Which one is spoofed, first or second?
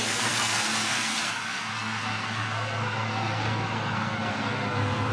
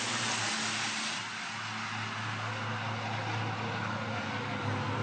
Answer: first